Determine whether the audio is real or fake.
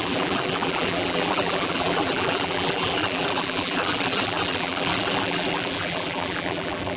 fake